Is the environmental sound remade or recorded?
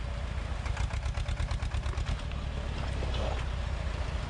recorded